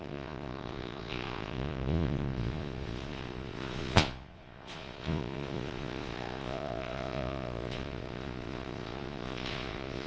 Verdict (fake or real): fake